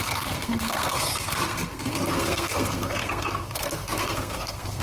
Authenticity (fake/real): fake